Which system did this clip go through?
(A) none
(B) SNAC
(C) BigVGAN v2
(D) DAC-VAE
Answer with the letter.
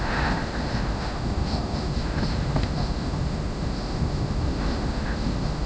D